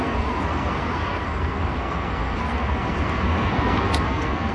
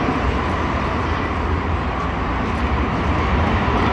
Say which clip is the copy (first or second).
first